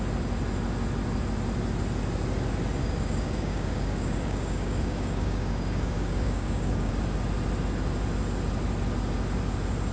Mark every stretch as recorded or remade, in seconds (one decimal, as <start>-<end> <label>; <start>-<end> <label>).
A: 0.0-2.8 recorded; 2.8-6.9 remade; 6.9-9.9 recorded